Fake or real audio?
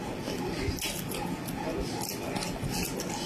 real